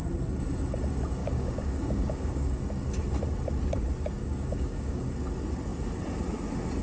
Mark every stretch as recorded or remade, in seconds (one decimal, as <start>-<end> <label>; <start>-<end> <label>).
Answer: 0.0-1.2 recorded; 1.2-2.6 remade; 2.6-4.2 recorded; 4.2-5.1 remade; 5.1-6.8 recorded